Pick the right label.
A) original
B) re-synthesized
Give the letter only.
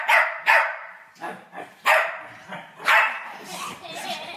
B